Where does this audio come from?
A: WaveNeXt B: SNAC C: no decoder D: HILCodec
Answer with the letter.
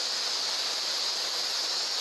C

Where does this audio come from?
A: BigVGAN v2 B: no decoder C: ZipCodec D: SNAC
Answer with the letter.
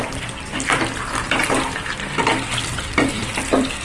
A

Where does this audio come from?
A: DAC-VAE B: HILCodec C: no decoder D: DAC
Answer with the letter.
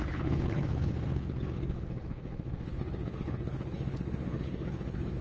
B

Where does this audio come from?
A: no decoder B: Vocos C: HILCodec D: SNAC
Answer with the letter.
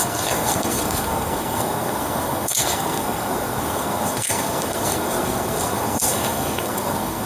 D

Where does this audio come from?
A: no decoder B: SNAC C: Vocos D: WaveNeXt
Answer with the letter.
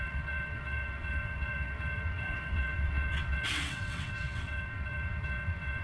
D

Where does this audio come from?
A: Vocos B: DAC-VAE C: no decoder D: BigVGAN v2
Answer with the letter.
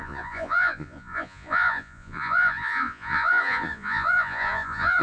A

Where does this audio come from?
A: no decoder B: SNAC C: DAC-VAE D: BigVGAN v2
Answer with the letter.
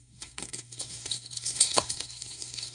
B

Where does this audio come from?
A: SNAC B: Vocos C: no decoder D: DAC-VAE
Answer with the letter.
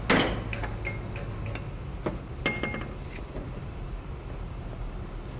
C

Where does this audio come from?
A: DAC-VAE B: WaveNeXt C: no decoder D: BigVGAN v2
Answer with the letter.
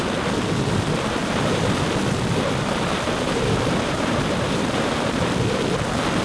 D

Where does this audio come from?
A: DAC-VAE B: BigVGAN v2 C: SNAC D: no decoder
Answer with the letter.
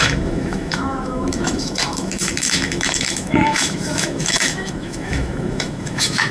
A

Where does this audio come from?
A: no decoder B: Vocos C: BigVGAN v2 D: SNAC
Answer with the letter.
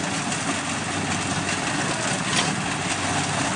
A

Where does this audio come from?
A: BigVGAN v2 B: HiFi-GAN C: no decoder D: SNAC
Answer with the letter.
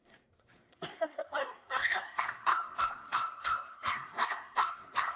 D